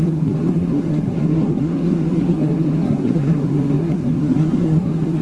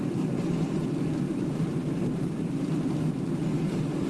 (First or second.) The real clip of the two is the second